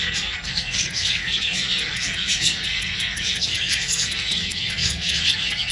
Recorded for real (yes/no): no